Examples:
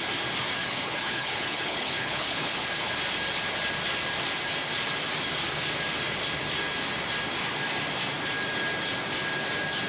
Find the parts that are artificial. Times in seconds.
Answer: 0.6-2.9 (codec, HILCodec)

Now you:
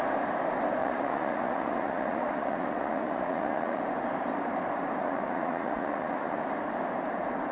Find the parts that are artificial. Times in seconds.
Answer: 0.8-3.8 (vocoder, Vocos); 5.0-6.4

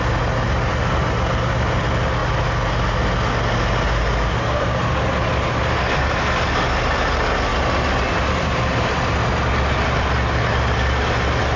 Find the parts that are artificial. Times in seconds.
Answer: 7.5-10.8 (vocoder, BigVGAN v2)

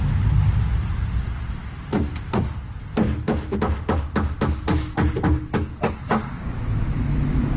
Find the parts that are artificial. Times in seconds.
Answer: none

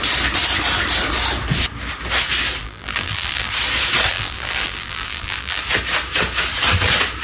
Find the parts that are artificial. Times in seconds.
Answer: 2.6-3.5 (vocoder, BigVGAN v2); 4.1-5.6

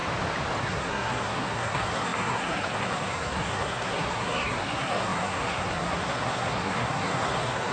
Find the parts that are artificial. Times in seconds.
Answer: 0.6-7.7 (codec, SNAC)

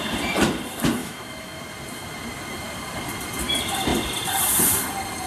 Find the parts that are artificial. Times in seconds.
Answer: 1.0-1.6 (autoencoder, DAC-VAE)

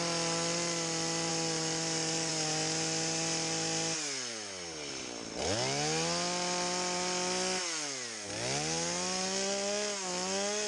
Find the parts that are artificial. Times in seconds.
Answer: none